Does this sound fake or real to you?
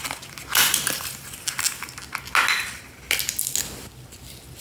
real